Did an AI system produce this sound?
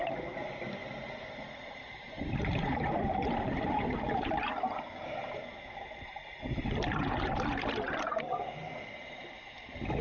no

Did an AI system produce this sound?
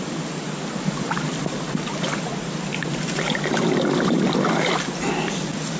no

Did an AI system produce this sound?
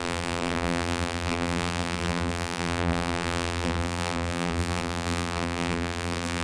yes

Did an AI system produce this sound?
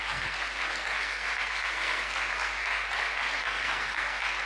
yes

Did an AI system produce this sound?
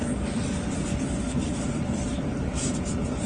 no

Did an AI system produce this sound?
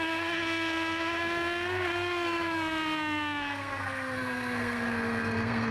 yes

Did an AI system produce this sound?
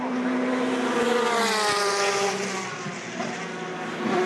no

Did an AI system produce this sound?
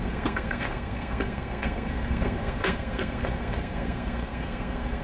yes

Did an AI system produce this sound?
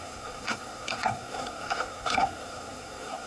yes